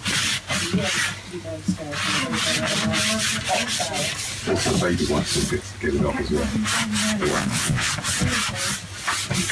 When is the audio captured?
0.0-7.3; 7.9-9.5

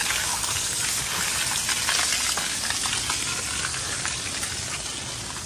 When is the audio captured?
1.2-3.7; 4.2-5.5

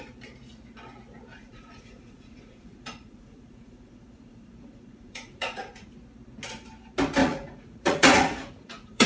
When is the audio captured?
0.0-1.3; 5.9-7.2

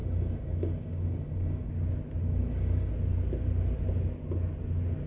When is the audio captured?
1.7-2.2; 2.9-5.1

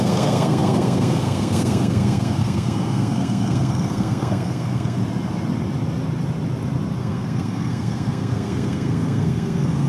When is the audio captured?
5.0-7.0

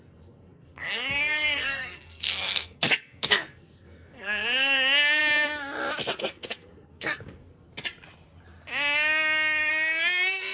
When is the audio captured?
5.2-6.2; 7.7-9.7

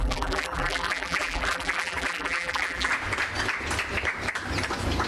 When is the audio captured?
2.9-5.1